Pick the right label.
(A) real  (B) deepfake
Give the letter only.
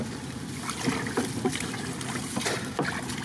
A